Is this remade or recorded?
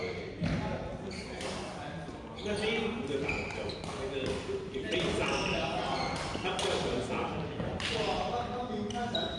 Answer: recorded